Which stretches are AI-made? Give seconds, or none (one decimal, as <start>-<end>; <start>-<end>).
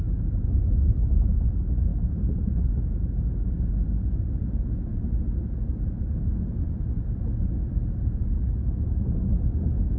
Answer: none